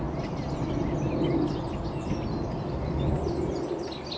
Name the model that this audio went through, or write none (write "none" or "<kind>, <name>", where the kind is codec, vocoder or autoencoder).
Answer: none